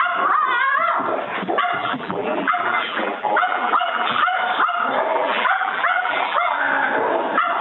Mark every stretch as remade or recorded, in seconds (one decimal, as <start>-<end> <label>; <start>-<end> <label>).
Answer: 0.0-1.8 recorded; 1.8-4.2 remade; 4.2-5.1 recorded; 5.1-6.6 remade; 6.6-7.6 recorded